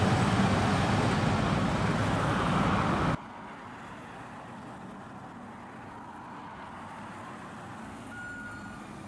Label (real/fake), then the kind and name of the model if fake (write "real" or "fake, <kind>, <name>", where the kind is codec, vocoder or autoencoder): real